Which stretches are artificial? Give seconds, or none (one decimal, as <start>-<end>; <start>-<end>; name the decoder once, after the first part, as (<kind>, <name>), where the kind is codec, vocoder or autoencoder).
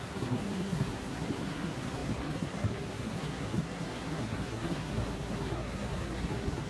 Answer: 0.0-6.7 (codec, SNAC)